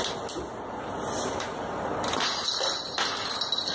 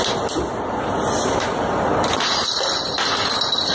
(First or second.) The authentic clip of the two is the first